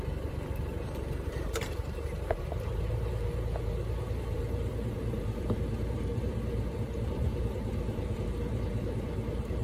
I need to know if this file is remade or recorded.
remade